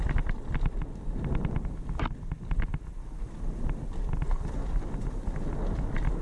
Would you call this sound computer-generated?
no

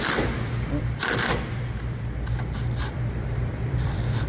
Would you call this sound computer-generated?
yes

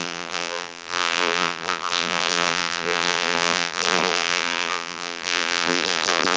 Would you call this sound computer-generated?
yes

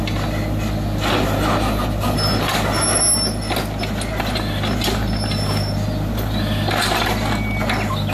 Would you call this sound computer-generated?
no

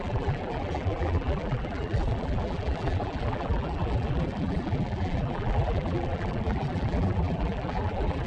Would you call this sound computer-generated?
yes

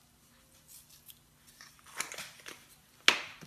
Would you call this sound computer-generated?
no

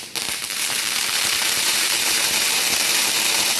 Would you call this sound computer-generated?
yes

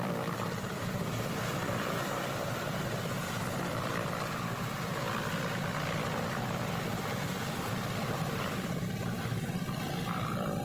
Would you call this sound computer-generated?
yes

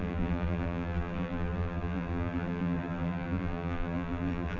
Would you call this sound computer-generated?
yes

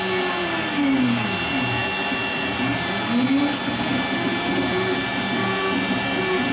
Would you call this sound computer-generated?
no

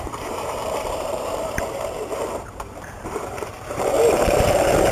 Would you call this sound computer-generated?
yes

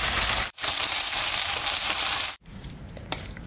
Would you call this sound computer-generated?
yes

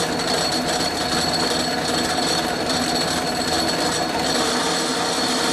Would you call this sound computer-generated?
no